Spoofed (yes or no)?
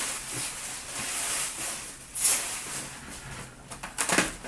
no